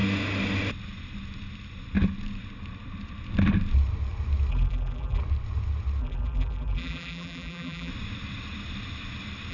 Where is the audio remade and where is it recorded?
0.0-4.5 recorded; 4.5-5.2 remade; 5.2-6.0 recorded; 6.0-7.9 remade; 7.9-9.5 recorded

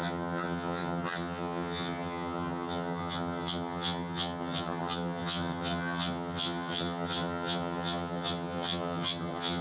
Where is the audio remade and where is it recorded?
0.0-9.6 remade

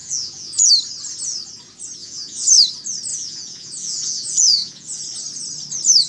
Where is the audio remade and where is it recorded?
0.0-0.7 remade; 0.7-2.0 recorded; 2.0-2.5 remade; 2.5-3.1 recorded; 3.1-5.0 remade; 5.0-6.1 recorded

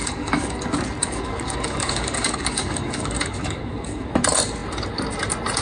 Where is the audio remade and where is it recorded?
0.0-0.6 remade; 0.6-1.0 recorded; 1.0-4.1 remade; 4.1-5.6 recorded